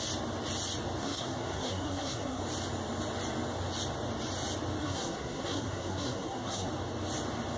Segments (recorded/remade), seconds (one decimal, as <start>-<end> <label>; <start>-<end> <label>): 0.0-1.0 recorded; 1.0-2.4 remade; 2.4-4.8 recorded; 4.8-6.7 remade; 6.7-7.6 recorded